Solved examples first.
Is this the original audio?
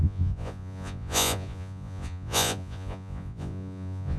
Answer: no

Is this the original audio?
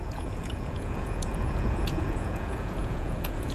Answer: no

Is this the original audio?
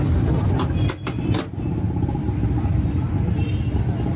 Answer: yes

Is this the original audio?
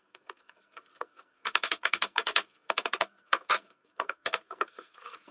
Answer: no